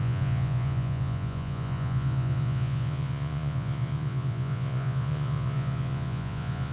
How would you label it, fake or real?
fake